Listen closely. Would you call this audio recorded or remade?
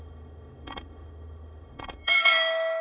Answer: remade